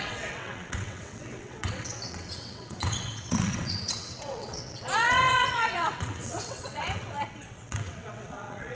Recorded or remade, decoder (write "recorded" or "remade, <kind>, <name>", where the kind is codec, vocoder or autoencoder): remade, vocoder, WaveNeXt